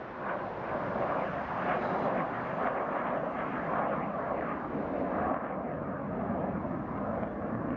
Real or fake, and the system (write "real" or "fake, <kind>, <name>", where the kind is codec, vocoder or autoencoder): real